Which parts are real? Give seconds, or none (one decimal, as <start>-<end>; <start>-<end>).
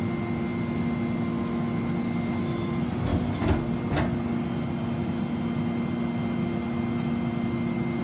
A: 0.0-8.0